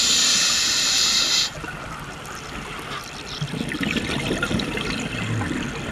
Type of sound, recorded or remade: recorded